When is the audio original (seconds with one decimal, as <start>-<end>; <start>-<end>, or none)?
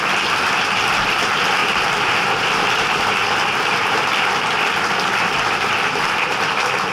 0.0-6.9